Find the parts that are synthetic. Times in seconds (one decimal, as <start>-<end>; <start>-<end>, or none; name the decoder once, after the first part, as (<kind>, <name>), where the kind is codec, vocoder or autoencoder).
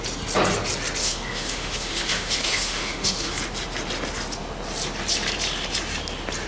1.0-3.3 (autoencoder, DAC-VAE)